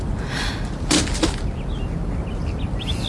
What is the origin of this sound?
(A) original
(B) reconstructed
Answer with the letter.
A